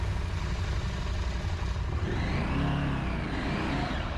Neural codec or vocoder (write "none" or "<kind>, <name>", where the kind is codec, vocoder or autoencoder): none